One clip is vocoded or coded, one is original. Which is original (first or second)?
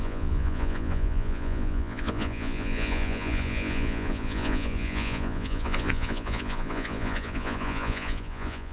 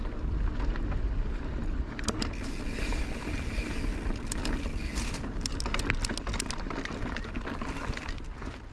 second